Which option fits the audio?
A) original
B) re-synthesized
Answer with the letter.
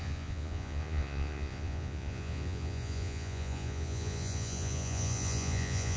B